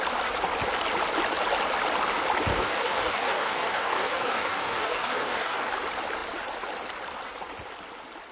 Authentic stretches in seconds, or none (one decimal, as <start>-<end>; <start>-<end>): 0.0-2.5; 5.7-8.3